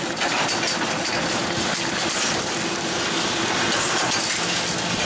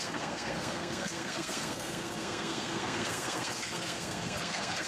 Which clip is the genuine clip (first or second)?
first